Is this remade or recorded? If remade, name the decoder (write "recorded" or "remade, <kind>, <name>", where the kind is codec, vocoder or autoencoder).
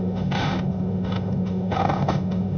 remade, autoencoder, DAC-VAE